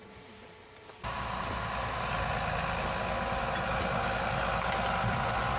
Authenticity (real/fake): real